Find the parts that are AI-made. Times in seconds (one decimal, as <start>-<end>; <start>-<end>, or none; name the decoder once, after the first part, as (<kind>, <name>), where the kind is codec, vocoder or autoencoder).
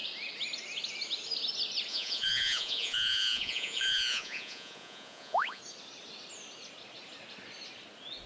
1.9-5.6 (vocoder, Vocos)